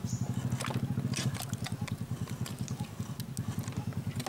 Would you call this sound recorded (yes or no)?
yes